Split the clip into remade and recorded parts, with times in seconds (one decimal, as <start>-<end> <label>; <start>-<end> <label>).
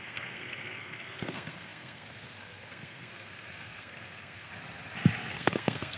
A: 0.0-4.5 remade; 4.5-5.3 recorded; 5.3-6.0 remade